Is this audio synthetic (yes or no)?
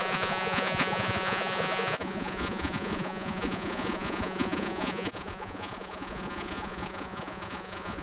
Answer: yes